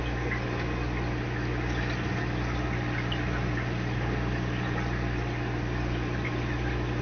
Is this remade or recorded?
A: recorded